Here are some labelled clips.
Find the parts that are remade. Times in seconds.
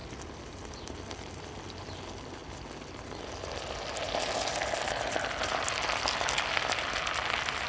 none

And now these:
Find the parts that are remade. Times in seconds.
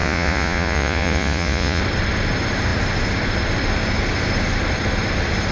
0.0-1.8 (vocoder, Vocos)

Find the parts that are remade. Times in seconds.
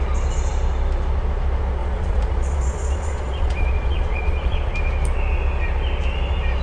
1.8-4.7 (vocoder, Vocos)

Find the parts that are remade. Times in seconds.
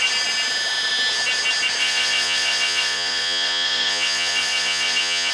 1.8-5.3 (vocoder, Vocos)